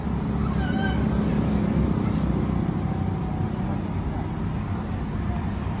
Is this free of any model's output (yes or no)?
yes